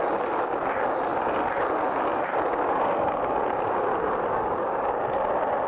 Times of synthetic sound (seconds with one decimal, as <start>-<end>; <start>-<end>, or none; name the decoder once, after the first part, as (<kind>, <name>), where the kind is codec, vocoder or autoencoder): 4.3-4.9 (codec, DAC)